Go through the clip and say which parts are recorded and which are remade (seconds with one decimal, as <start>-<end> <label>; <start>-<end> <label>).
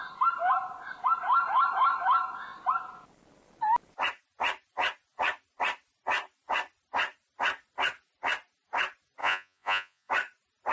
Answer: 0.0-9.2 recorded; 9.2-10.1 remade; 10.1-10.7 recorded